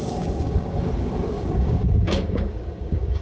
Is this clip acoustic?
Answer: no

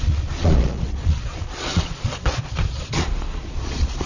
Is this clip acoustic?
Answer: no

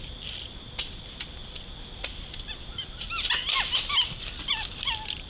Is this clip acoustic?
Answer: yes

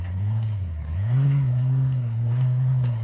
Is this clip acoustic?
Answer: no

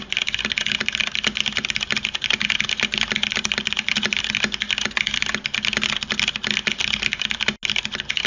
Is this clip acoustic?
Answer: yes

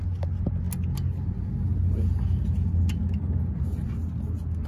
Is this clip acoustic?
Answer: yes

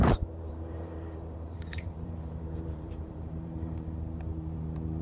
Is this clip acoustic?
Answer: no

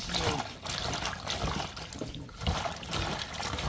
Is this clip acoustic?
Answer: yes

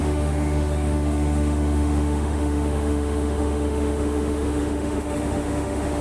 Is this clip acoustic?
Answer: no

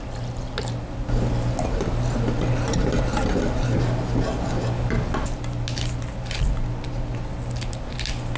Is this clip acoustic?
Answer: yes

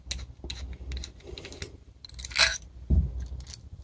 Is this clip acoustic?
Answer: yes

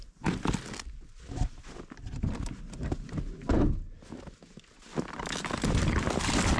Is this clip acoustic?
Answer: yes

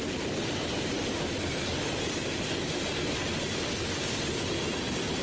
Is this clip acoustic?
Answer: yes